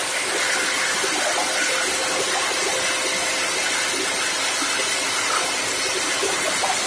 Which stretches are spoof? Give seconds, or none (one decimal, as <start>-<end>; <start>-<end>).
none